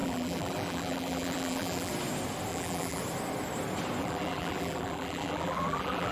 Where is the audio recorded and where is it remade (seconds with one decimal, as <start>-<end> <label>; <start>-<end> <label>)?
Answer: 0.0-1.9 remade; 1.9-2.5 recorded; 2.5-3.0 remade; 3.0-4.0 recorded; 4.0-6.1 remade